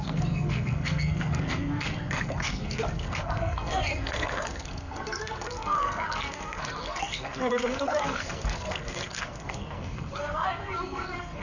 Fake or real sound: fake